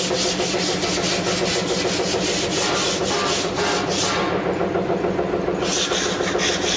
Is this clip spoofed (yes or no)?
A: no